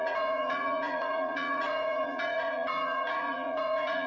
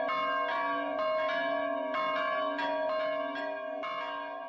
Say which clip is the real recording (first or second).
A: second